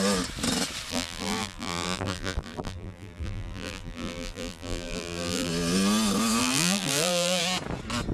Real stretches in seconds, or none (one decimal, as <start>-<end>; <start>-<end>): 0.0-0.9; 5.5-6.4; 7.4-8.1

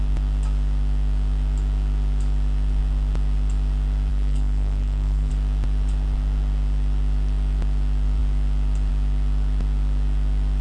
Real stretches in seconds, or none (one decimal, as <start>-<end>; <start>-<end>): 0.0-4.1; 5.3-10.6

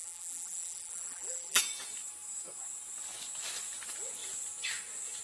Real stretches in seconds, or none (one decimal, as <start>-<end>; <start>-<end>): 1.6-5.2

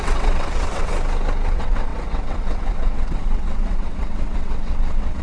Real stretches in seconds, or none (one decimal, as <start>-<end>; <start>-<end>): 0.9-1.5